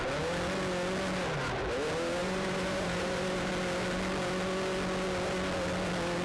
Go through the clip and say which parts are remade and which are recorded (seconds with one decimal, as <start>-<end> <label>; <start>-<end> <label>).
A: 0.0-2.2 recorded; 2.2-3.5 remade; 3.5-6.2 recorded